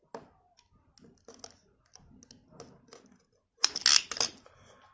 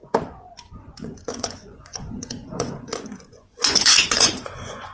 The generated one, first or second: second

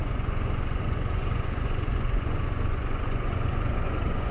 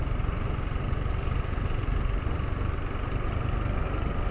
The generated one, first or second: first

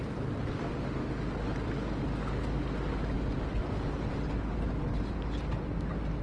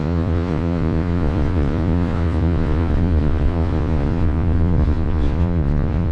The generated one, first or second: second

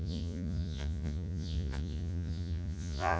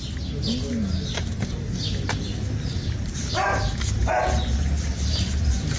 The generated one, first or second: first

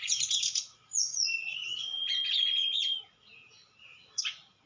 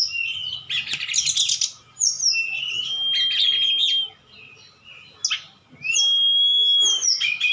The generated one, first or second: first